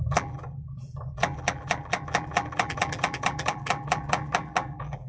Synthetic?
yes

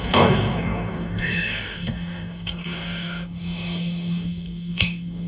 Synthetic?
yes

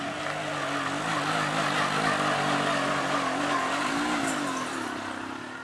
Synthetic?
no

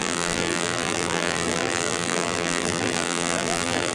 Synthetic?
yes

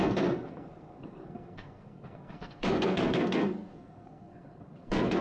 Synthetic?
yes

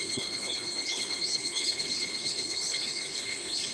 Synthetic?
yes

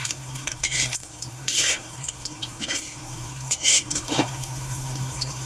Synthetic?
yes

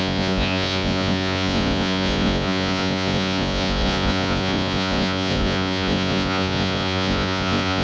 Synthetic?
yes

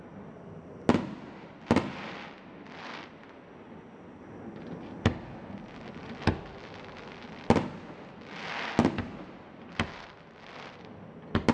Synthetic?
no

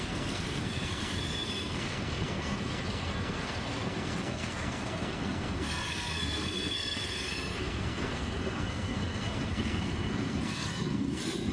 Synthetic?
yes